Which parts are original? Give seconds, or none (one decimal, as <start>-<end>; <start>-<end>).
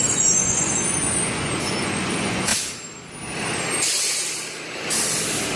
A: 2.5-5.6